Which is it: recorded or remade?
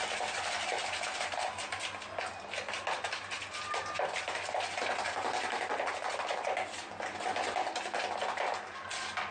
recorded